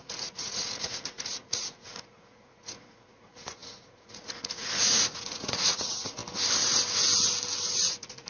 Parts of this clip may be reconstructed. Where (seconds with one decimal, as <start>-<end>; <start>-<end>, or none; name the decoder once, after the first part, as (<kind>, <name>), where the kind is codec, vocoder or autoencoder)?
0.0-6.2 (vocoder, Vocos); 7.7-8.3